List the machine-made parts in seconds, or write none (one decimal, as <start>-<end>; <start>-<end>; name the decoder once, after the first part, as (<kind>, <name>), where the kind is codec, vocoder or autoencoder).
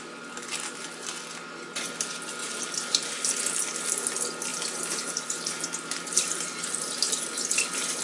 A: 2.4-3.7 (vocoder, BigVGAN v2); 4.5-7.2